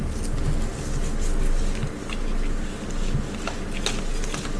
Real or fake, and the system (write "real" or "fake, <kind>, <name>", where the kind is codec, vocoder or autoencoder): real